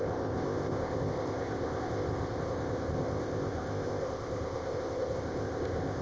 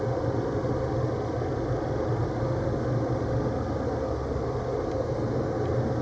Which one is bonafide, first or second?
second